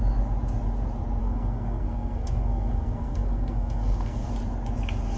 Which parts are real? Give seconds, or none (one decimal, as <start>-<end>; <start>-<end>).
0.0-1.2; 4.3-5.2